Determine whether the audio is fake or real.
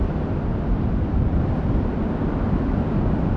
real